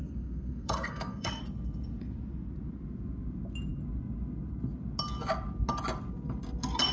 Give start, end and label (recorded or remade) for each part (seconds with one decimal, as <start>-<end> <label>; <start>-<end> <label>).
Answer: 0.0-1.4 remade; 1.4-6.9 recorded